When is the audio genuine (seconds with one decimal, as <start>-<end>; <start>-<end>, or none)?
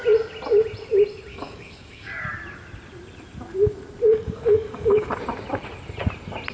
0.0-1.3; 2.2-4.1; 5.1-6.5